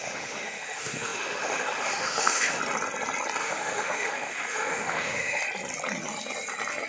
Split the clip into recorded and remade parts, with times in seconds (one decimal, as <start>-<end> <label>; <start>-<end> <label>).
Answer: 0.0-2.6 remade; 2.6-3.4 recorded; 3.4-5.4 remade; 5.4-6.9 recorded

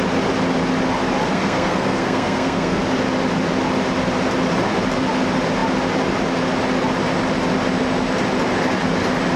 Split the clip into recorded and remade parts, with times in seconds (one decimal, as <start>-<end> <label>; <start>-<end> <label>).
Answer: 0.0-1.3 recorded; 1.3-2.8 remade; 2.8-9.4 recorded

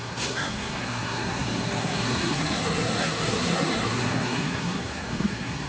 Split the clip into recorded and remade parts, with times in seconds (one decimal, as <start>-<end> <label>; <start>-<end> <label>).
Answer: 0.0-5.7 remade

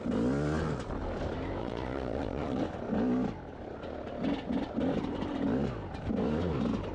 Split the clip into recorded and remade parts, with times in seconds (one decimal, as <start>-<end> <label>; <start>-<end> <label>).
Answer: 0.0-1.6 recorded; 1.6-2.6 remade; 2.6-6.9 recorded